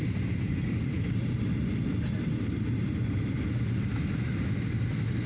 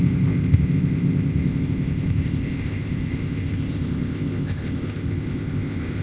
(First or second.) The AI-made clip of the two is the second